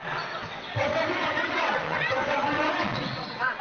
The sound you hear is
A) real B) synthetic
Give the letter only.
B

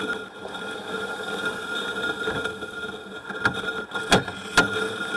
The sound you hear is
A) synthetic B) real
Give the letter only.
B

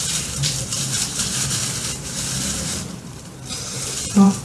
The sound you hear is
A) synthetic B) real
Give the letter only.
A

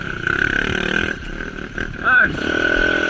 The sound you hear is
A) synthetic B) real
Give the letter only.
A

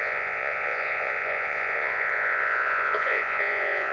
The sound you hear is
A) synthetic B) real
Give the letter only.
A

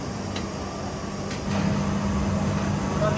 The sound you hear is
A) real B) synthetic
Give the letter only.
A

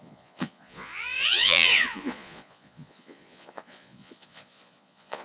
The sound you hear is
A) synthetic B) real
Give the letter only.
A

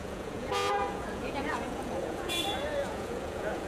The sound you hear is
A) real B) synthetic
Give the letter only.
B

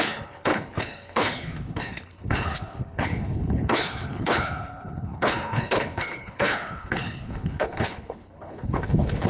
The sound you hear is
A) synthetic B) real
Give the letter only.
A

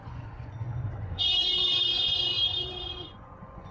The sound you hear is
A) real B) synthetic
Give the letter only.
B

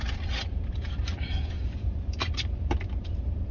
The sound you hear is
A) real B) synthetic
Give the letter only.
B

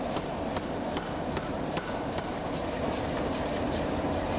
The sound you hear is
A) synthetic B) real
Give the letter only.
A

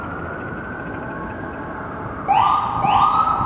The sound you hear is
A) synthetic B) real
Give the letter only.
B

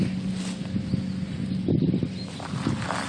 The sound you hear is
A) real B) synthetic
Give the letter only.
A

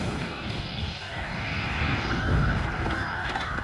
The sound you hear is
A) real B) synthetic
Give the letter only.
B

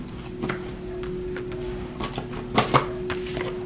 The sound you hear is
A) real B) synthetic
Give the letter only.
A